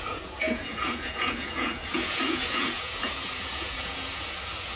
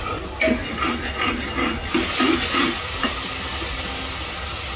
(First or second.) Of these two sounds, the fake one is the first